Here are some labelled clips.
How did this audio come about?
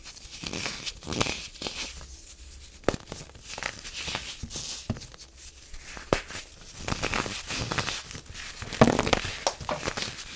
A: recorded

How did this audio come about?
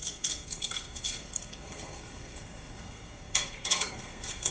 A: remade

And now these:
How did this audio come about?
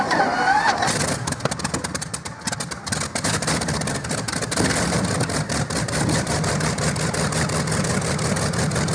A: recorded